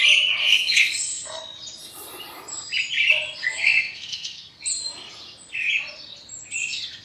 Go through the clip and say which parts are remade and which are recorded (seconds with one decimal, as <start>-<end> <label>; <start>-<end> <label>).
0.0-0.4 recorded; 0.4-1.4 remade; 1.4-3.4 recorded; 3.4-4.6 remade; 4.6-7.0 recorded

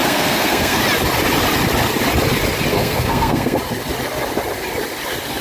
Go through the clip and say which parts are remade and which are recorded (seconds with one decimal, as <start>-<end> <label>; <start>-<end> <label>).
0.0-0.8 remade; 0.8-2.7 recorded; 2.7-3.6 remade; 3.6-5.4 recorded